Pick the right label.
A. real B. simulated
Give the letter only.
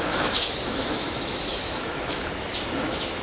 B